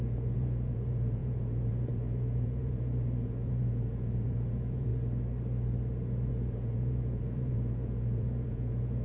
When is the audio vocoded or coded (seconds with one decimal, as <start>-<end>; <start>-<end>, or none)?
0.0-4.9; 6.3-9.0